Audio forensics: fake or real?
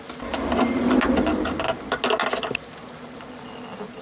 real